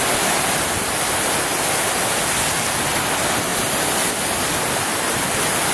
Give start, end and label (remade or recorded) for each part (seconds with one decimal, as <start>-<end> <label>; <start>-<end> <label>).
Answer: 0.0-5.7 recorded